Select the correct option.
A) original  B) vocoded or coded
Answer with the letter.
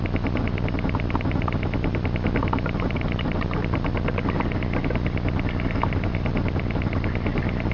A